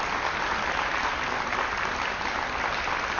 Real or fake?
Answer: real